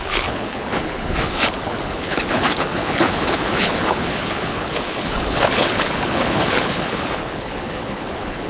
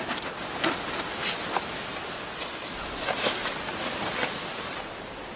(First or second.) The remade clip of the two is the first